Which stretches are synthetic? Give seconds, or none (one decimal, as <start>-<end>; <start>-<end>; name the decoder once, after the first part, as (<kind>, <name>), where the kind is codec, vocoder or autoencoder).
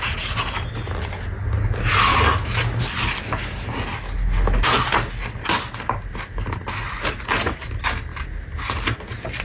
none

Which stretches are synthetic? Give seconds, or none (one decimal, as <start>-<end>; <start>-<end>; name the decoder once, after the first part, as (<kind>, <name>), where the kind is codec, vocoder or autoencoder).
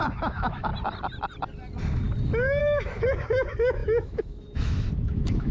0.0-0.7 (autoencoder, DAC-VAE); 2.6-5.5